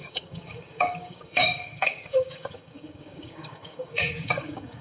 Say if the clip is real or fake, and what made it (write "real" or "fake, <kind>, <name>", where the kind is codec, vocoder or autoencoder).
fake, codec, DAC